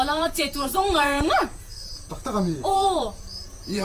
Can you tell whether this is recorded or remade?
remade